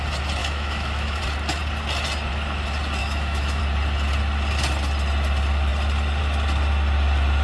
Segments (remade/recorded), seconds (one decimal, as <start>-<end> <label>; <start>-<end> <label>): 0.0-0.4 recorded; 0.4-1.2 remade; 1.2-3.0 recorded; 3.0-3.6 remade; 3.6-7.4 recorded